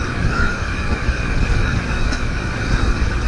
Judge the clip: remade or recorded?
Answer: remade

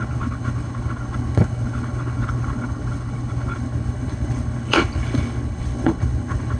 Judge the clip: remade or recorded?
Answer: remade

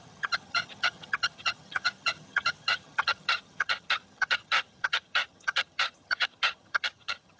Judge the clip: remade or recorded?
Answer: remade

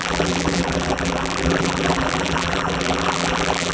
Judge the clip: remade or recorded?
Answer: remade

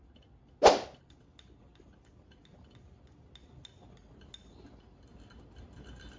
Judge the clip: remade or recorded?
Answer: recorded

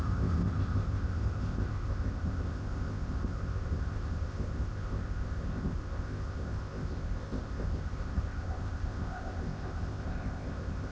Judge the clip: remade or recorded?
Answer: remade